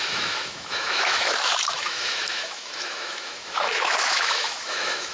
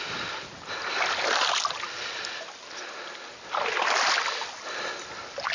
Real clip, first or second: second